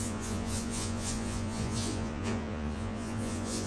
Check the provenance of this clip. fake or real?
fake